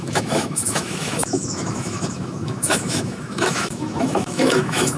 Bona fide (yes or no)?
no